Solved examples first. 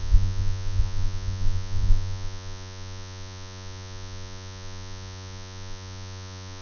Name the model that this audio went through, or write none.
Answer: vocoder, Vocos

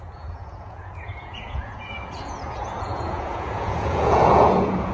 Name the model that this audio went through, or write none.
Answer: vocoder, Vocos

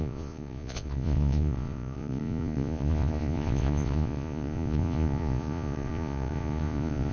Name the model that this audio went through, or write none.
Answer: vocoder, Vocos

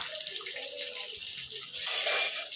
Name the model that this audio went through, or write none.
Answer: none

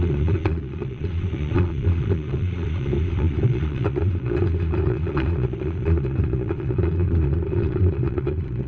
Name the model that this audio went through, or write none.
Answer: vocoder, Vocos